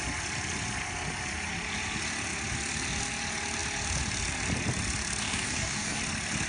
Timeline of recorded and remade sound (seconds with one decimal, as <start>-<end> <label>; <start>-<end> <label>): 0.0-5.2 recorded; 5.2-6.0 remade; 6.0-6.5 recorded

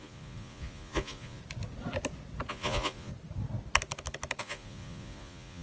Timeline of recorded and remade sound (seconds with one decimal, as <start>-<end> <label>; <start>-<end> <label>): 0.0-1.4 remade; 1.4-2.5 recorded; 2.5-3.1 remade; 3.1-4.4 recorded; 4.4-5.6 remade

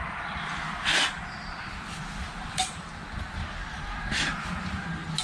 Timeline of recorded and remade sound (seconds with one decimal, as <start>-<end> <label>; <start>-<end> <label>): 0.0-0.5 remade; 0.5-2.0 recorded; 2.0-3.0 remade; 3.0-3.7 recorded; 3.7-4.3 remade; 4.3-5.2 recorded